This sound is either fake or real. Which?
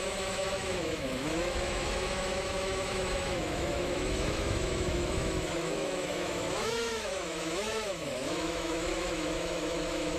fake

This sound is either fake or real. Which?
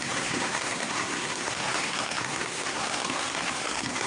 fake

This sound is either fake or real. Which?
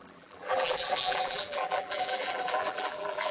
fake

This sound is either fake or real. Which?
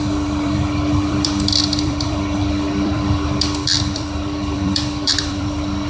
fake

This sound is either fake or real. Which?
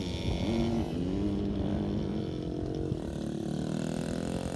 real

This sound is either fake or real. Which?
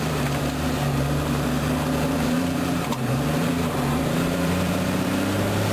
fake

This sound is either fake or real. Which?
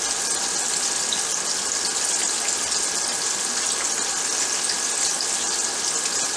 real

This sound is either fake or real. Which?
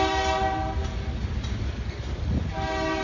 real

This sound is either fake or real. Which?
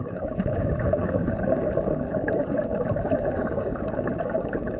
fake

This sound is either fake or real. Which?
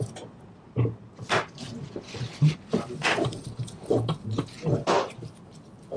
real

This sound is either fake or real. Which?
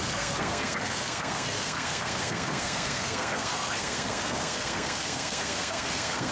fake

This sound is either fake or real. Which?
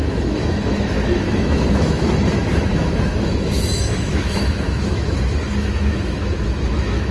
fake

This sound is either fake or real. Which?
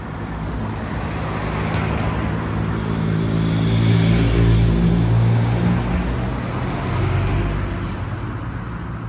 real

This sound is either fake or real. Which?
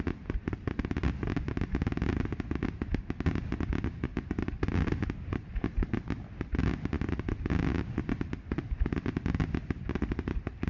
real